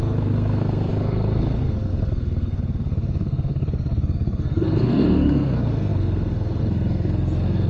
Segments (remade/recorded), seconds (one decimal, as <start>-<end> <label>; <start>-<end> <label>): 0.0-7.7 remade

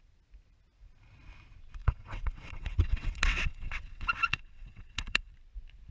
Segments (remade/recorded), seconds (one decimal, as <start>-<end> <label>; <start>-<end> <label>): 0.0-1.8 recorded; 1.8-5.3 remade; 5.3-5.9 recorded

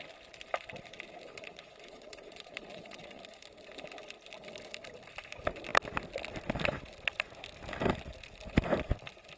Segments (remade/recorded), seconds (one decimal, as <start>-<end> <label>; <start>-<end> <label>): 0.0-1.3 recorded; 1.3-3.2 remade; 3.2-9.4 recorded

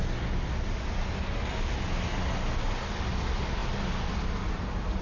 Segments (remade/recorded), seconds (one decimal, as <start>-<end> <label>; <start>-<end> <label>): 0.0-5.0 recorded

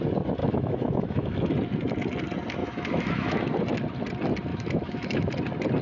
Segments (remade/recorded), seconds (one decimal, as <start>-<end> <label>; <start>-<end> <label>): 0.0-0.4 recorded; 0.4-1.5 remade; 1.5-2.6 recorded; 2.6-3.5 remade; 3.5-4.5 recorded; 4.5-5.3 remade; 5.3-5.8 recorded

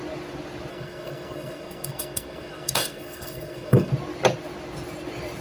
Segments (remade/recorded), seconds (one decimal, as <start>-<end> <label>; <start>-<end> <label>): 0.0-0.7 recorded; 0.7-3.9 remade; 3.9-5.4 recorded

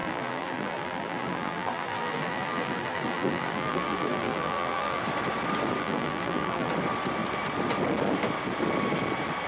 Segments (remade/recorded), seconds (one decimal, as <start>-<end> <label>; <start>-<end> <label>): 0.0-5.0 remade; 5.0-5.8 recorded; 5.8-6.7 remade; 6.7-9.5 recorded